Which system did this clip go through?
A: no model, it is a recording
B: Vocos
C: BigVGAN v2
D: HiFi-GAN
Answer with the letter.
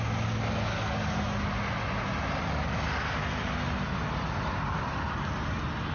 A